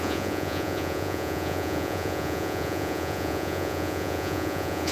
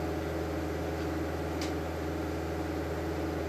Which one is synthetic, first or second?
first